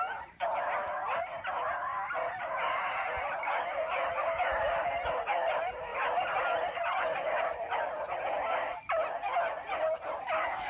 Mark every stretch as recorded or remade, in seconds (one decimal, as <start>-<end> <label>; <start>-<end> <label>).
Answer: 0.0-10.7 recorded